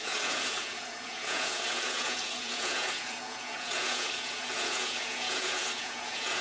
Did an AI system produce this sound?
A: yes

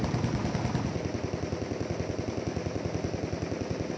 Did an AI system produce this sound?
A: no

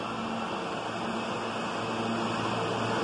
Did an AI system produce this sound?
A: no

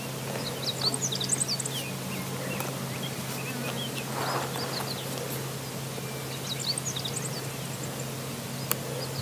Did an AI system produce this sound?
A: no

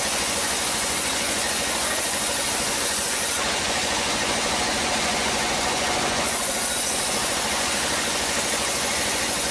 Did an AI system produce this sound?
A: yes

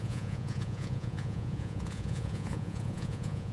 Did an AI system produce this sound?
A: yes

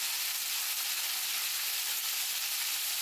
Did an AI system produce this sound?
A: no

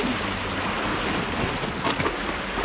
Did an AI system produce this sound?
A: no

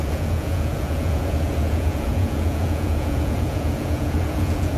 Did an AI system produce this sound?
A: yes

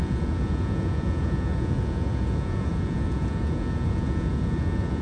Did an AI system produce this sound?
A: yes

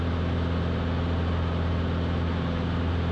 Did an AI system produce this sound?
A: no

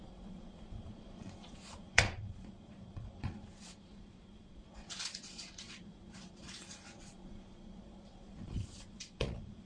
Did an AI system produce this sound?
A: yes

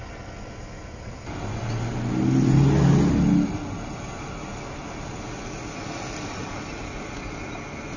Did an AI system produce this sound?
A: no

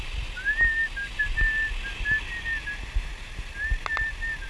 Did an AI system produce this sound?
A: no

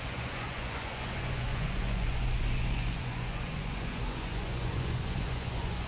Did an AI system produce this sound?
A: yes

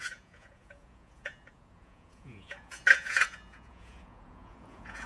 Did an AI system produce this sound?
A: yes